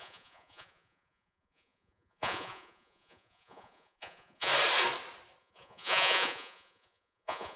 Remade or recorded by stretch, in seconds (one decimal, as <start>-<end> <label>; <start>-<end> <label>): 0.0-4.5 remade; 4.5-5.4 recorded; 5.4-7.6 remade

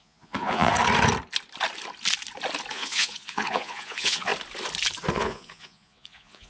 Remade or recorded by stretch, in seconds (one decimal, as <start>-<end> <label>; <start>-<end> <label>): 0.0-0.7 remade; 0.7-2.7 recorded; 2.7-4.3 remade; 4.3-5.1 recorded; 5.1-6.5 remade